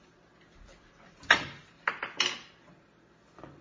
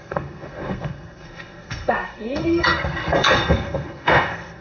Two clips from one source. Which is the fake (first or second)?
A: second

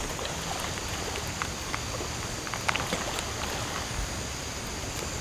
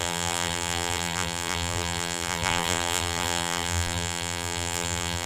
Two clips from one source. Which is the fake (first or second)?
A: second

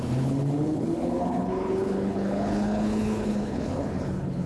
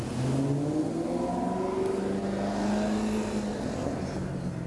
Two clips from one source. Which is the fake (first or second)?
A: first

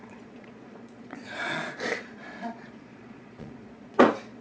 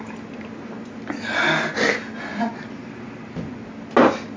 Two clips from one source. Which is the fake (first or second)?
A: first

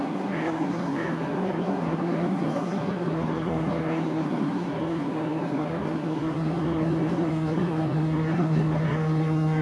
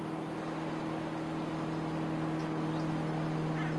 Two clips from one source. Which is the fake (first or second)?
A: first